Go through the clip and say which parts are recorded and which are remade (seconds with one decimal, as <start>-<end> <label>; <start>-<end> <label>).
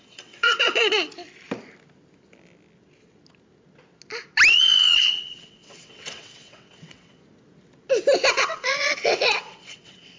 0.0-1.1 remade; 1.1-4.5 recorded; 4.5-7.2 remade; 7.2-8.3 recorded; 8.3-10.2 remade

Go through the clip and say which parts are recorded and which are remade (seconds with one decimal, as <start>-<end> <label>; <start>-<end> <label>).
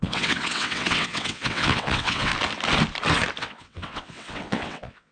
0.0-2.3 remade; 2.3-3.4 recorded; 3.4-5.1 remade